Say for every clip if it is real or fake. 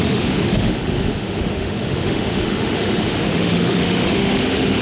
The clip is fake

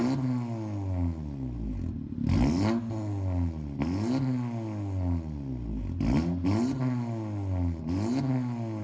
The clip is real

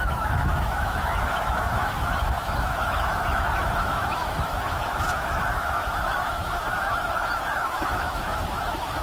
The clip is fake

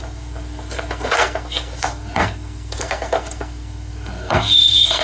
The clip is fake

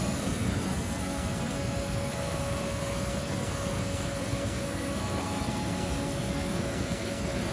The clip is fake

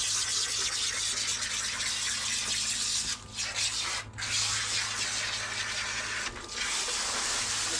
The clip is real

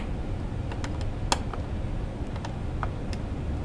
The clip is real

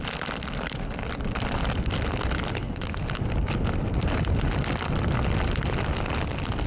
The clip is real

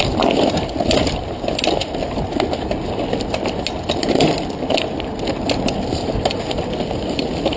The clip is real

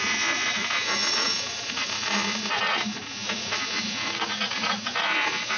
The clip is fake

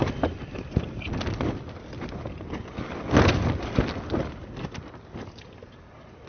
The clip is real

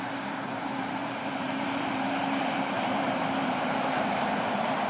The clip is fake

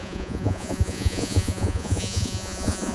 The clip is fake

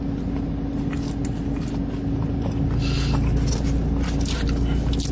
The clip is real